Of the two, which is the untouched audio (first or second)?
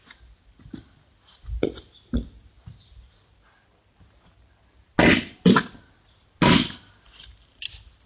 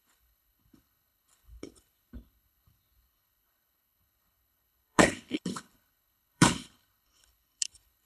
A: first